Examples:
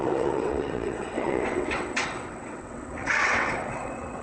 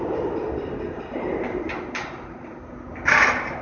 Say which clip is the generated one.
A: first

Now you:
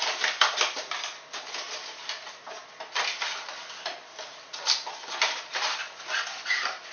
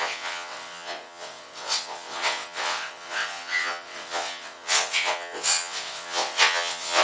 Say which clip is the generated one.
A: second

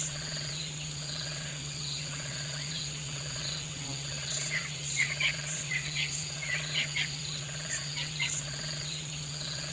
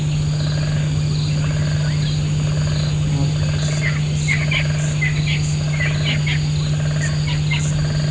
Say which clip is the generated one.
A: first